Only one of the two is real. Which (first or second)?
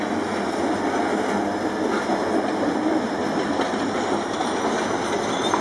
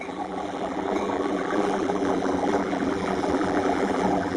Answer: first